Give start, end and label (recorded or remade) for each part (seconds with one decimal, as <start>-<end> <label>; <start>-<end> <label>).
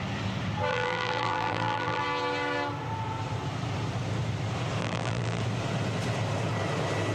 0.0-0.7 recorded; 0.7-2.0 remade; 2.0-4.8 recorded; 4.8-5.4 remade; 5.4-7.1 recorded